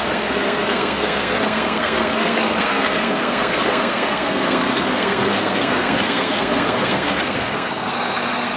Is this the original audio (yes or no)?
no